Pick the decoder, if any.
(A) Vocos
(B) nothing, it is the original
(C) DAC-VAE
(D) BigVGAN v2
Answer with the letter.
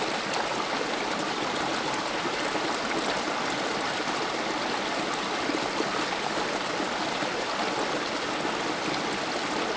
B